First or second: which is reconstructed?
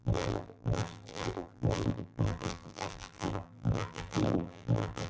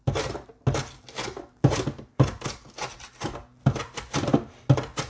first